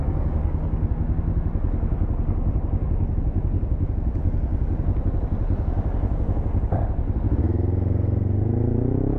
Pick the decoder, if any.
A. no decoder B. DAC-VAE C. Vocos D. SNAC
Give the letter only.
A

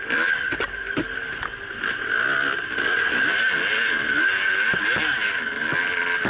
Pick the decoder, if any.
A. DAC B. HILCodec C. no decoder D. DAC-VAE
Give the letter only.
C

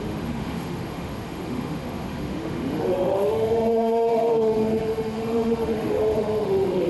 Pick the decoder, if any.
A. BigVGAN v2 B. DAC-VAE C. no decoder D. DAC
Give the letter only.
B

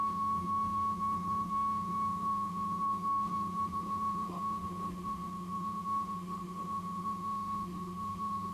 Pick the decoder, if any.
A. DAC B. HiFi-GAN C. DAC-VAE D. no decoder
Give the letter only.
C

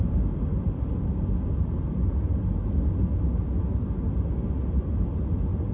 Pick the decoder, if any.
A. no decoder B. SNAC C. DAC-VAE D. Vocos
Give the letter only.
A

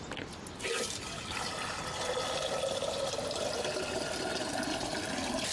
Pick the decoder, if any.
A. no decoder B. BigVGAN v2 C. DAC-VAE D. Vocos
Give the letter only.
A